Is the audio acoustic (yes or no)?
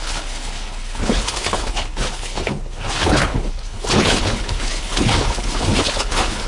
no